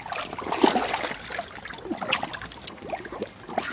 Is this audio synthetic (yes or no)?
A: no